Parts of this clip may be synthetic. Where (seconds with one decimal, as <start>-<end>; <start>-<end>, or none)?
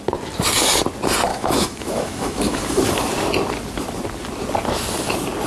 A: 1.3-2.8